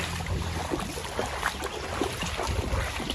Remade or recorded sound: recorded